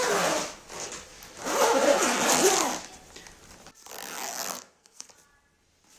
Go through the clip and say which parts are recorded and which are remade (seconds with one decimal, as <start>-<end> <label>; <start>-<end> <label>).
0.0-4.5 recorded; 4.5-5.1 remade; 5.1-6.0 recorded